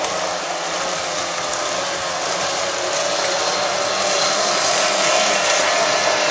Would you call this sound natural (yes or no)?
yes